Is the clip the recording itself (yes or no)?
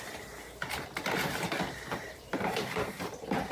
no